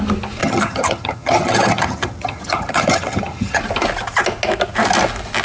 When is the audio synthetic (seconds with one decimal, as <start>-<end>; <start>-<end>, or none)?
0.4-3.6